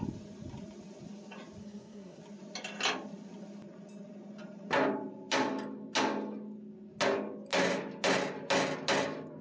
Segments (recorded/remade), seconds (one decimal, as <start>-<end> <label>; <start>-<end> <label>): 0.0-1.6 recorded; 1.6-2.2 remade; 2.2-9.4 recorded

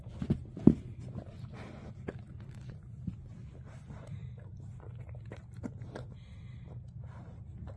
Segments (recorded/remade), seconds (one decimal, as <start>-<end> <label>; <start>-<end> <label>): 0.0-7.8 recorded

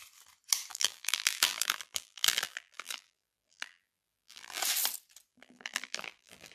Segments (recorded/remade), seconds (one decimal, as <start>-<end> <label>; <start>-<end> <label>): 0.0-0.7 recorded; 0.7-4.6 remade; 4.6-5.3 recorded; 5.3-6.5 remade

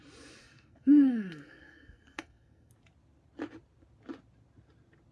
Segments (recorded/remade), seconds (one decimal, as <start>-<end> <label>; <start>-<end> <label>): 0.0-0.4 recorded; 0.4-2.7 remade; 2.7-5.1 recorded

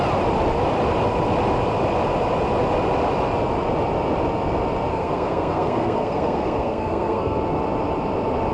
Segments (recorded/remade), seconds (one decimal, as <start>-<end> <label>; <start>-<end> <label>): 0.0-4.9 recorded; 4.9-7.4 remade; 7.4-8.5 recorded

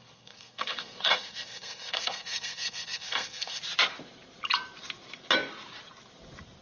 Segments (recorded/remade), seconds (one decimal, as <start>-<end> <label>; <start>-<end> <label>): 0.0-3.6 remade; 3.6-6.6 recorded